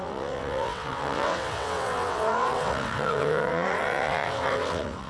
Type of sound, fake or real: fake